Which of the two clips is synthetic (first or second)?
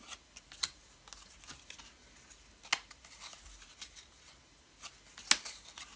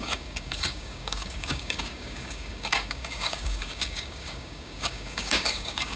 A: second